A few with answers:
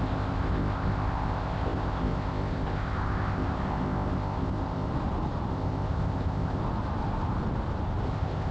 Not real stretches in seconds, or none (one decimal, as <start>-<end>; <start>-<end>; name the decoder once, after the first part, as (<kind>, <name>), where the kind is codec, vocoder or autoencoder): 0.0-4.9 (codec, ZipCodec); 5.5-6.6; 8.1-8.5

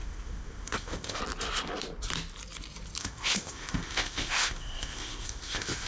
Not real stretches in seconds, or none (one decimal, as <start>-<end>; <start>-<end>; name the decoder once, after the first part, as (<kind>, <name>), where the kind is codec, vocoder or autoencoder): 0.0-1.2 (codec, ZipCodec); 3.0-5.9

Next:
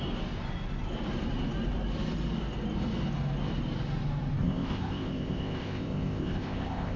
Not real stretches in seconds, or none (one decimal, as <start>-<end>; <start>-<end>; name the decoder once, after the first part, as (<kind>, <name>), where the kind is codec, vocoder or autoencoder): 4.4-7.0 (codec, ZipCodec)

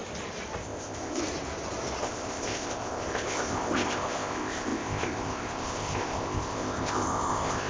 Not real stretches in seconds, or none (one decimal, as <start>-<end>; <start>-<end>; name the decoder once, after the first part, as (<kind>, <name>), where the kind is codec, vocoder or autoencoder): 0.6-1.2 (codec, ZipCodec); 2.0-7.7

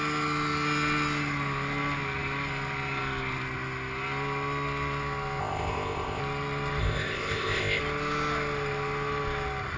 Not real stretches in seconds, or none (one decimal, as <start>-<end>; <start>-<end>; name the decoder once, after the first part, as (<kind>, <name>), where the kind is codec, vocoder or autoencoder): 5.4-6.2 (codec, ZipCodec); 6.8-7.8

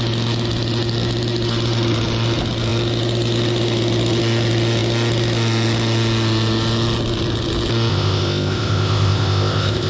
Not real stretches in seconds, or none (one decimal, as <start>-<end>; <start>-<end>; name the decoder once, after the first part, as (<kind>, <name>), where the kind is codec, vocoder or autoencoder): 7.9-9.9 (codec, ZipCodec)

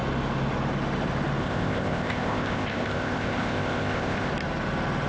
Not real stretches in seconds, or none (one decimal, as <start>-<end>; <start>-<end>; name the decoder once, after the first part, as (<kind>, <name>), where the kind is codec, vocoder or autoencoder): 1.4-4.3 (codec, ZipCodec)

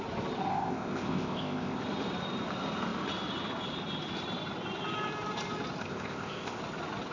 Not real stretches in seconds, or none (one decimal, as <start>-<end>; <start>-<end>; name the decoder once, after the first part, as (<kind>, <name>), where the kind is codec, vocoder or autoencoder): 0.5-1.8 (codec, ZipCodec); 5.8-6.6